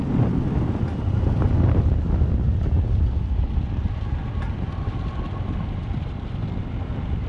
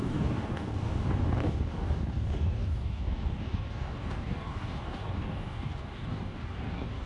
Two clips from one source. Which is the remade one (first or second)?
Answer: second